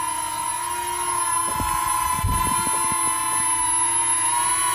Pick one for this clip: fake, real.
real